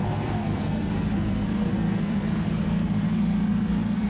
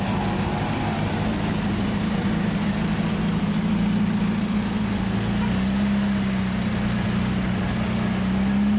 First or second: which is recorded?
second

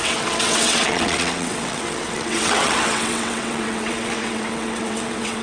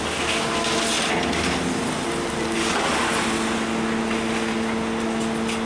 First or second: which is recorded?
second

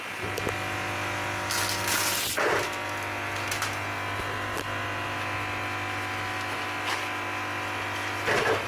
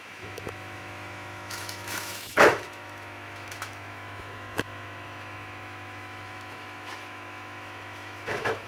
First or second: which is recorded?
first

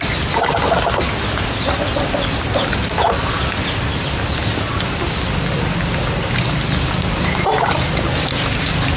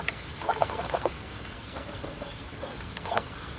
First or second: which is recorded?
first